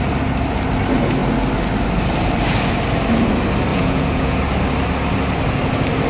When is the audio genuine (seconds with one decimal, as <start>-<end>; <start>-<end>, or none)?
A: 0.0-3.7; 4.4-6.1